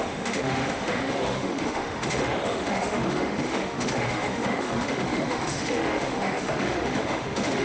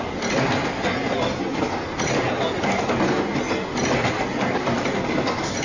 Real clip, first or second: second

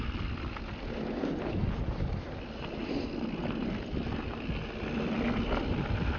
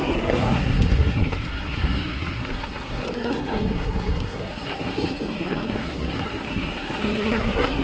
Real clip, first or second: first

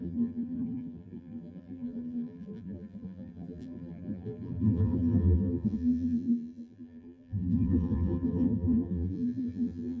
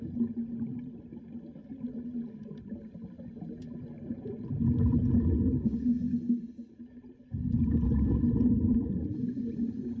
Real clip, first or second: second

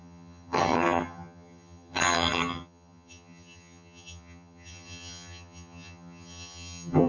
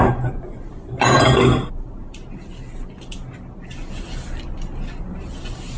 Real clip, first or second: second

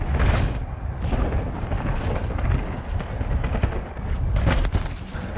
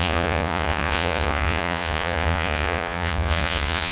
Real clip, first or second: first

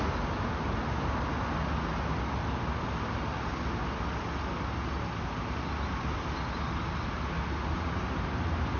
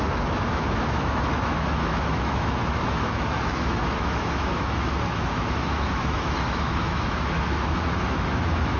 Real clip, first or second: first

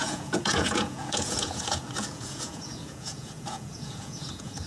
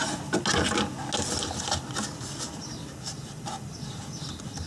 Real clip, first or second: second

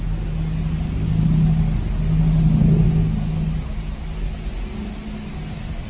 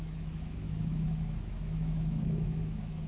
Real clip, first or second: first